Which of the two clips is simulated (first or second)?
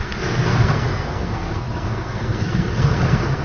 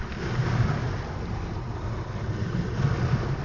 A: first